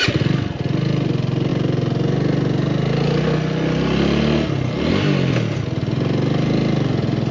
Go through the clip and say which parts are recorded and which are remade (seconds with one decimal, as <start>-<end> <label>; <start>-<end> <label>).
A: 0.0-7.3 recorded